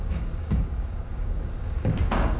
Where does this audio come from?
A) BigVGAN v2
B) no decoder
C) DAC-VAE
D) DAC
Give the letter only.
D